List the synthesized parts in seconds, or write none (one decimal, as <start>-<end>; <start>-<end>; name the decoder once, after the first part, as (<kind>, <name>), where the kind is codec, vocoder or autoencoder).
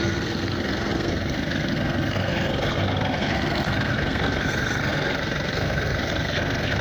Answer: 0.0-6.8 (codec, SNAC)